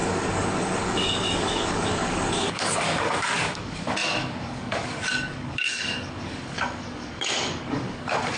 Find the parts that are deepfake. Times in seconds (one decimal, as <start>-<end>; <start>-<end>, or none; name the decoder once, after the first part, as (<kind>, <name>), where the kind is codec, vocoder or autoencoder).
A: 0.0-8.4 (codec, DAC)